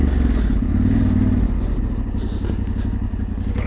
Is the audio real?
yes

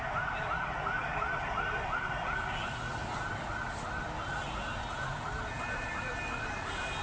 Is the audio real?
yes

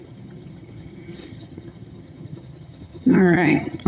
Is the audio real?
no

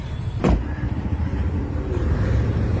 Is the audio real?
no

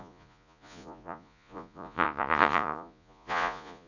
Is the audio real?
no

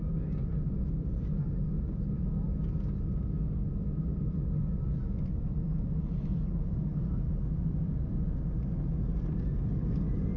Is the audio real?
yes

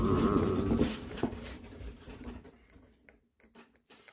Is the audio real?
no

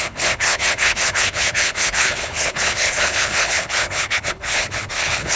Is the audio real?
no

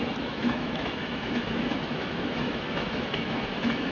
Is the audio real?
no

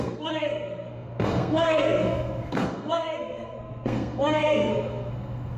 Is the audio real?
no